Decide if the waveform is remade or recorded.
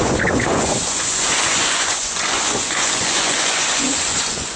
remade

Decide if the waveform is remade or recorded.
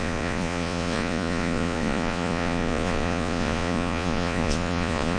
remade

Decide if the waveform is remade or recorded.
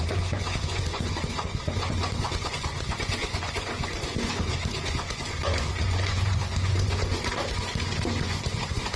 remade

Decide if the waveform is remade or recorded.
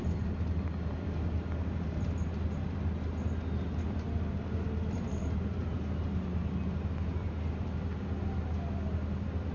recorded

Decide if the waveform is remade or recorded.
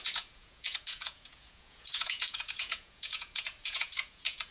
remade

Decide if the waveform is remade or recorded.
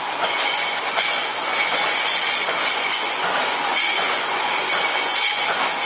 remade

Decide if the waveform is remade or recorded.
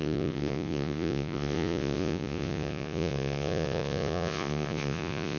remade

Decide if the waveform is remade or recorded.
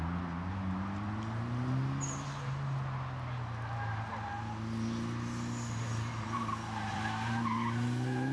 recorded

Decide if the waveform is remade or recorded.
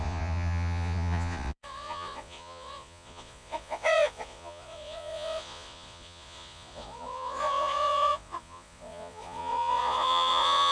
remade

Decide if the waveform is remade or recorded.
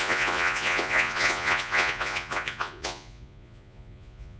remade